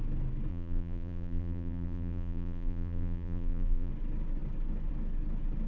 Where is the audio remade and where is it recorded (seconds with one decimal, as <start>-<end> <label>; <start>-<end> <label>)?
0.0-0.5 recorded; 0.5-3.9 remade; 3.9-5.7 recorded